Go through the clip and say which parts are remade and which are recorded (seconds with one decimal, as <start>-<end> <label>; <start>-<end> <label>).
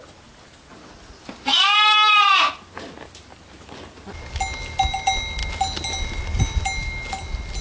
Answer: 0.0-7.6 recorded